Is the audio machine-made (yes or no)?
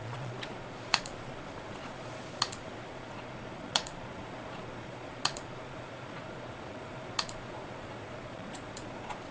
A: yes